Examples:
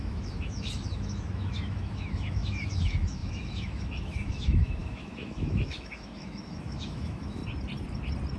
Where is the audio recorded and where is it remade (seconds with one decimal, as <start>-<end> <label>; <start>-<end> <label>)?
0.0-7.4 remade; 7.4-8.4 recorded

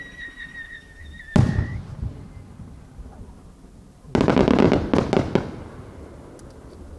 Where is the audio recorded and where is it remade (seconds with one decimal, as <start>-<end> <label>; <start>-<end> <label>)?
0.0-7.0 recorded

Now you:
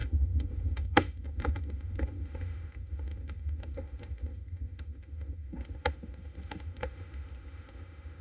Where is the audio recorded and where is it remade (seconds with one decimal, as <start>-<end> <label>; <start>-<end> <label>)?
0.0-8.2 remade

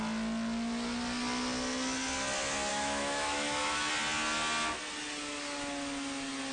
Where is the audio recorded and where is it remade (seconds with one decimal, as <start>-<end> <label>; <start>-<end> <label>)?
0.0-2.7 recorded; 2.7-3.9 remade; 3.9-6.5 recorded